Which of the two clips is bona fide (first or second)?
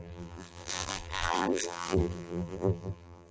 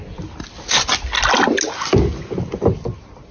second